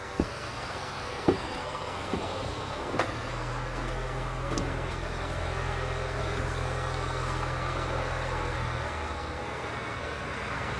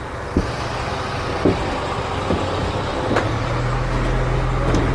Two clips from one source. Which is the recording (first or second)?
second